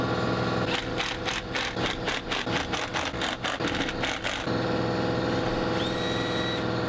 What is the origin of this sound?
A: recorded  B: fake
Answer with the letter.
A